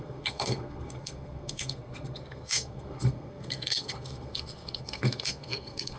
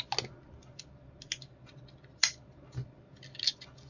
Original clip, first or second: second